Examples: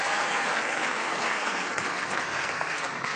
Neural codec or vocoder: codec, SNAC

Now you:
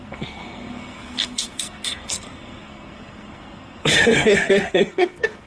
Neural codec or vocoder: codec, SNAC